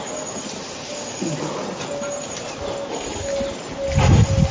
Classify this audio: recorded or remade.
recorded